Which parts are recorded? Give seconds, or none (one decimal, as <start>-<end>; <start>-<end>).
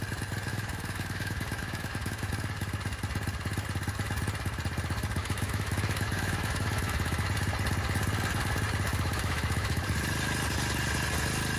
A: 0.0-0.5; 2.3-5.2; 7.3-8.9; 9.8-11.6